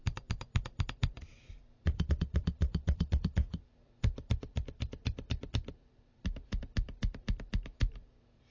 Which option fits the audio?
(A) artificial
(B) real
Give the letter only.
A